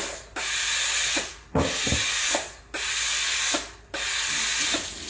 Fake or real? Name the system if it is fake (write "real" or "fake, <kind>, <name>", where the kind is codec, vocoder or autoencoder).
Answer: real